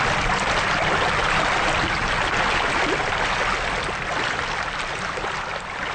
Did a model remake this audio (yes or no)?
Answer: no